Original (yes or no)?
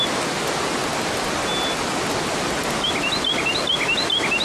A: yes